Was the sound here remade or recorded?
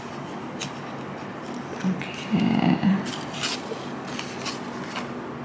recorded